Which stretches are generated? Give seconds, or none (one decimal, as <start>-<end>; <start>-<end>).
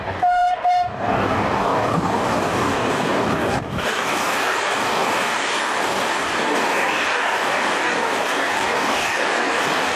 0.0-10.0